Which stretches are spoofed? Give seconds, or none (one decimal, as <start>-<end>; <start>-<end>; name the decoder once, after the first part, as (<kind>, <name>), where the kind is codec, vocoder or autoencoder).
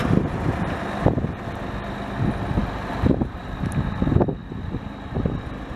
2.6-3.4 (vocoder, BigVGAN v2)